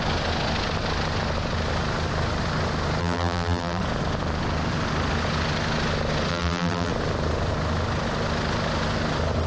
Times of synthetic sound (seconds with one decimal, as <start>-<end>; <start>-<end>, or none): 3.0-3.8; 6.3-6.9